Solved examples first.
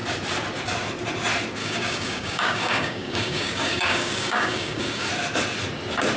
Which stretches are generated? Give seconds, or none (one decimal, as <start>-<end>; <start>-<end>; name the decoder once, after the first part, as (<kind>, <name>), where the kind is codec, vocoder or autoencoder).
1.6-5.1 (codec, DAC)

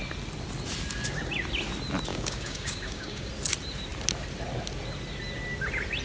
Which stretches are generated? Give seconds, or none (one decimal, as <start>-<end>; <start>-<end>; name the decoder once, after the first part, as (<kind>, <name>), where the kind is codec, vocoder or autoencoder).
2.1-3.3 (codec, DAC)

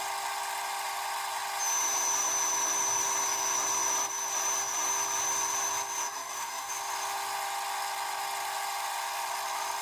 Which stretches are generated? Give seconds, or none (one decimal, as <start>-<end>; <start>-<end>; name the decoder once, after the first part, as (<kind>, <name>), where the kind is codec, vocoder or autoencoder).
6.0-6.7 (codec, DAC)

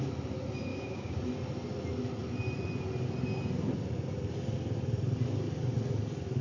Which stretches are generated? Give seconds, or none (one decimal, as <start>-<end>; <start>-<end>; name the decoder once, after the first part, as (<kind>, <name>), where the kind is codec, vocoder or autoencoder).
0.7-1.2 (codec, DAC)